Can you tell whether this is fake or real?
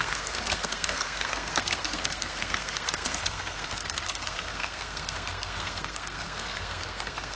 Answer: fake